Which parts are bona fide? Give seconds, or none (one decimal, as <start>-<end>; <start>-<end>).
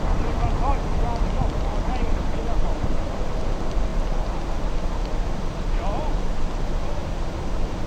0.0-7.9